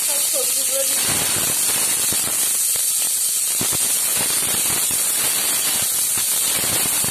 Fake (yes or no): no